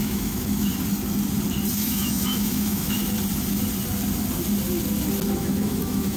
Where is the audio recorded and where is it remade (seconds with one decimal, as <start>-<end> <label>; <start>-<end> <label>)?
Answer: 0.0-0.7 remade; 0.7-1.7 recorded; 1.7-3.0 remade; 3.0-5.4 recorded; 5.4-6.2 remade

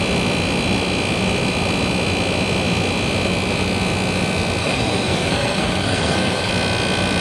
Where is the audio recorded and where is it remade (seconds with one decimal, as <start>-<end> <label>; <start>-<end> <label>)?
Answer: 0.0-4.6 recorded; 4.6-6.5 remade; 6.5-7.2 recorded

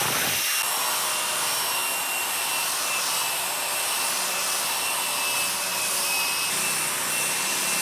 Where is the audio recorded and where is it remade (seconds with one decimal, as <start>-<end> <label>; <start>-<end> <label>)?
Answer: 0.0-7.8 recorded

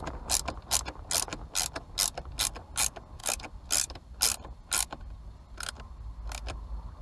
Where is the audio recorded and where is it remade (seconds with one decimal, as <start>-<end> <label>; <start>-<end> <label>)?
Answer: 0.0-7.0 recorded

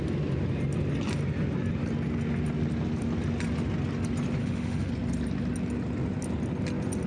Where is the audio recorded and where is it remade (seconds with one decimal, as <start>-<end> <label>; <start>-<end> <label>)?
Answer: 0.0-4.4 recorded; 4.4-4.9 remade; 4.9-7.1 recorded

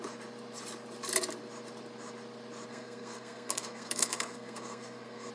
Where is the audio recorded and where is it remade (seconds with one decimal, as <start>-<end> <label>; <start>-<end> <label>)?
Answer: 0.0-2.7 recorded; 2.7-5.3 remade